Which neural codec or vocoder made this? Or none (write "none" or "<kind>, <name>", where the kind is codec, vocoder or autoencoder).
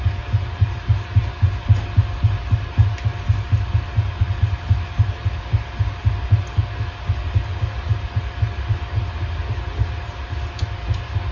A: none